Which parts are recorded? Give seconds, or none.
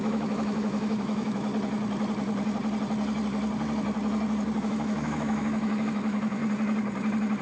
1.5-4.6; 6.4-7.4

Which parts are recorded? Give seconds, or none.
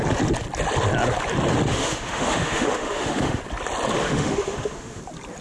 0.0-1.7; 3.4-4.0; 5.0-5.4